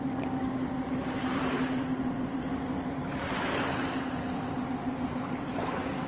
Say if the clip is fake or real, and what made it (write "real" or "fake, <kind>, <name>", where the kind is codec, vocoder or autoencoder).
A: real